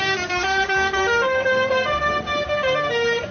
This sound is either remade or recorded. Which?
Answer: remade